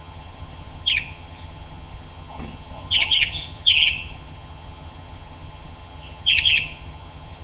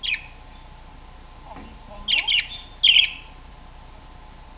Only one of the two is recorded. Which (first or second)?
second